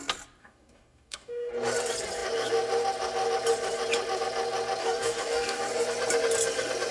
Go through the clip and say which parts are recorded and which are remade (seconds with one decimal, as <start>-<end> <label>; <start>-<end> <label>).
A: 0.0-0.4 recorded; 0.4-1.5 remade; 1.5-4.8 recorded; 4.8-5.6 remade; 5.6-6.9 recorded